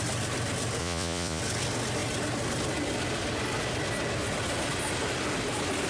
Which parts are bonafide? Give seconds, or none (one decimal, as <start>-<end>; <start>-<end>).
0.0-0.8; 1.4-5.9